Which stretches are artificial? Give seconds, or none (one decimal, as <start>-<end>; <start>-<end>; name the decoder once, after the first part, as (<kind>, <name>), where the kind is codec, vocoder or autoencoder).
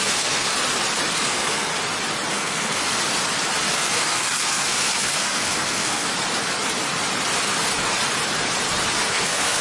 0.0-0.5 (codec, SNAC); 1.1-1.7; 2.3-3.0; 3.7-6.1; 9.1-9.6